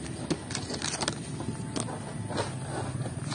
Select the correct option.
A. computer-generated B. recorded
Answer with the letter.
B